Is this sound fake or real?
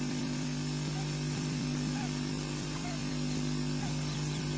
fake